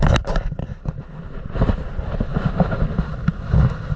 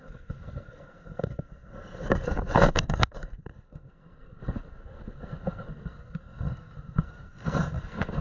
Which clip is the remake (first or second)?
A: second